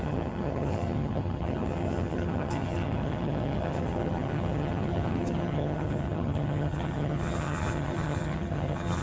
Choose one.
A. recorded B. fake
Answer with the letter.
B